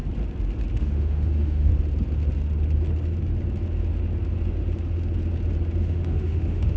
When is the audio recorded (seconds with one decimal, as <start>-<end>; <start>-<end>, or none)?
0.0-0.8; 1.7-5.8